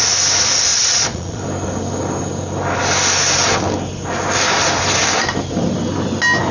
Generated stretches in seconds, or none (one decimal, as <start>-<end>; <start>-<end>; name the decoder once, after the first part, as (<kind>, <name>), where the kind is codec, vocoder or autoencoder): 0.7-1.4 (vocoder, Vocos)